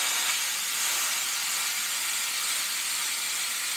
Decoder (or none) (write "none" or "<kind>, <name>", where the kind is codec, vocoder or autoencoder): vocoder, BigVGAN v2